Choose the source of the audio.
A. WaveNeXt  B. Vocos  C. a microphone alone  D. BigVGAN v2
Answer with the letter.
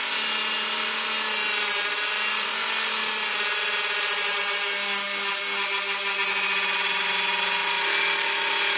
C